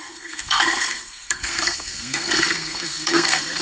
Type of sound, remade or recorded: remade